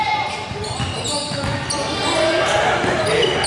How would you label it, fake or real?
real